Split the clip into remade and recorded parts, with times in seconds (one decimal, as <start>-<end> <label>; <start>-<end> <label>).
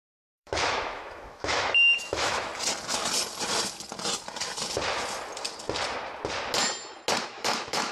0.0-2.5 remade; 2.5-7.2 recorded; 7.2-7.9 remade